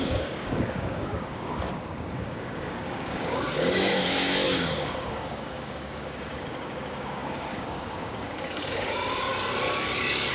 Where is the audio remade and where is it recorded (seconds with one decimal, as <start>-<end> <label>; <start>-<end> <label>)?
0.0-9.3 remade; 9.3-10.3 recorded